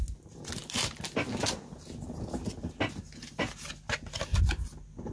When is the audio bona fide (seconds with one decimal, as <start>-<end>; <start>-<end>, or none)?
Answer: 0.0-5.1